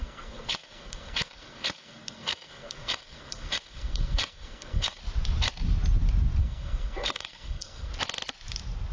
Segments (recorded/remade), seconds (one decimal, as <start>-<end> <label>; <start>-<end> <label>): 0.0-5.0 remade; 5.0-6.4 recorded; 6.4-7.9 remade; 7.9-8.9 recorded